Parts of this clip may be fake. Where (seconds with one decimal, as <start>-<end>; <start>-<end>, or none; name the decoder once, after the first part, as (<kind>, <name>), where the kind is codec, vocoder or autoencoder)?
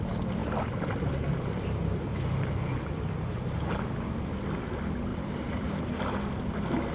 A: 0.4-3.7 (vocoder, BigVGAN v2); 5.1-5.8